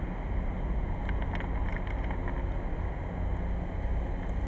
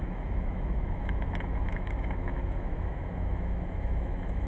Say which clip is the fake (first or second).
second